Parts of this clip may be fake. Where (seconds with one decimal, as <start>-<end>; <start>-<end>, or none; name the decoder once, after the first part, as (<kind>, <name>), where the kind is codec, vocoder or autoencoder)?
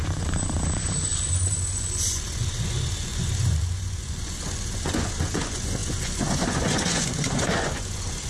0.0-8.3 (vocoder, Vocos)